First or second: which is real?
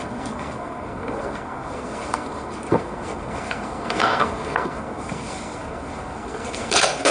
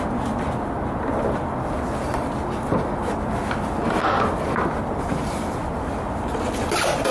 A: second